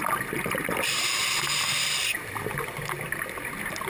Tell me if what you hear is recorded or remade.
recorded